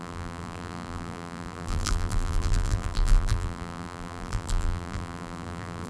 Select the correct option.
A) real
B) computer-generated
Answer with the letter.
B